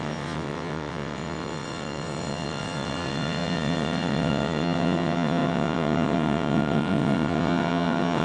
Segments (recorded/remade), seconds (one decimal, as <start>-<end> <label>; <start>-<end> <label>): 0.0-8.2 remade